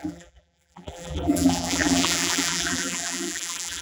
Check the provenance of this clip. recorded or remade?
remade